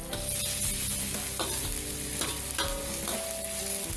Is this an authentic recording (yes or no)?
yes